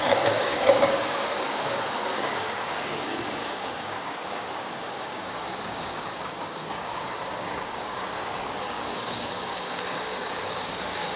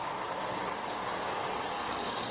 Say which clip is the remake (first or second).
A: first